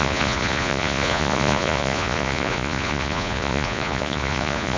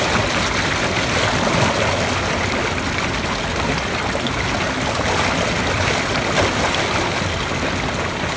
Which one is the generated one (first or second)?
first